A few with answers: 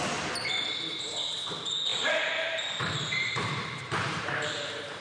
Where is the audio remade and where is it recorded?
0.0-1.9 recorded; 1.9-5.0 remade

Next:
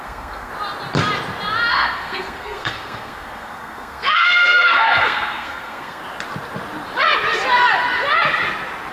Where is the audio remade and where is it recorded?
0.0-0.5 remade; 0.5-1.7 recorded; 1.7-6.0 remade; 6.0-8.9 recorded

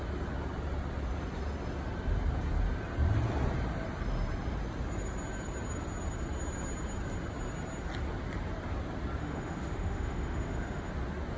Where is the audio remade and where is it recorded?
0.0-9.2 recorded; 9.2-10.9 remade; 10.9-11.4 recorded

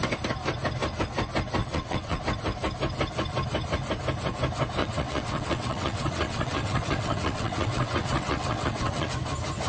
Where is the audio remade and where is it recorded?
0.0-1.6 recorded; 1.6-2.2 remade; 2.2-4.8 recorded; 4.8-9.1 remade; 9.1-9.7 recorded

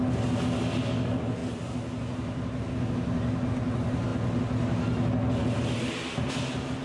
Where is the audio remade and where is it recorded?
0.0-6.8 recorded

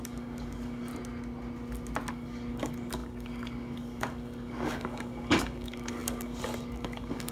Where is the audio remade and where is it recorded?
0.0-0.9 remade; 0.9-2.1 recorded; 2.1-7.3 remade

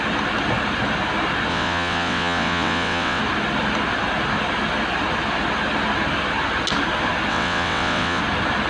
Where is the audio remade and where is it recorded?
0.0-1.5 recorded; 1.5-3.2 remade; 3.2-7.3 recorded; 7.3-8.2 remade; 8.2-8.7 recorded